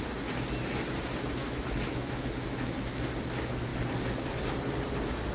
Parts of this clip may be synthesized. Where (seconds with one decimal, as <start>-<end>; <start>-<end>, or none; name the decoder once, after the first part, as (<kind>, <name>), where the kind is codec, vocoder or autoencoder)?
1.4-3.0 (autoencoder, DAC-VAE)